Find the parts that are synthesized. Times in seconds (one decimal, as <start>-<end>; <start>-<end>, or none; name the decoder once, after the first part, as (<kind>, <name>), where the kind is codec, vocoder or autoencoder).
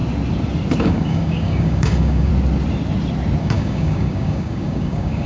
0.8-2.3 (codec, DAC); 3.4-5.3